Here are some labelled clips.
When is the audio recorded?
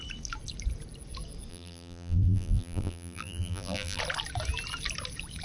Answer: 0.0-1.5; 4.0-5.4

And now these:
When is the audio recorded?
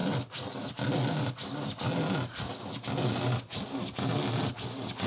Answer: 0.0-5.1